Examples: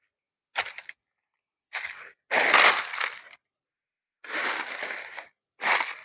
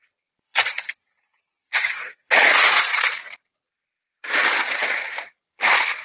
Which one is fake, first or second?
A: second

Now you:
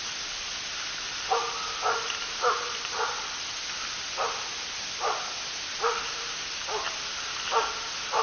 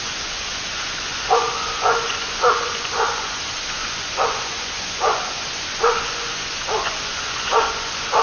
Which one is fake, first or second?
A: second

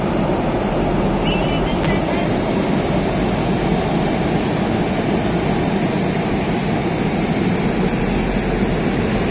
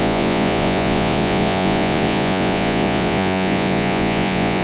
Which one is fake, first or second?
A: second